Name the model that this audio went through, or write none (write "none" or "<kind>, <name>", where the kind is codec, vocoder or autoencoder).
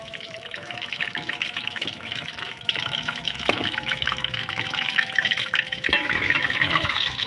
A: autoencoder, DAC-VAE